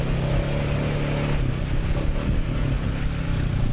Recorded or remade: recorded